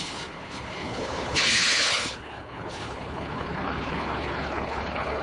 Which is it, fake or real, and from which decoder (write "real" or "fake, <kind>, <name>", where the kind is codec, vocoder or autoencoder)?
fake, codec, HILCodec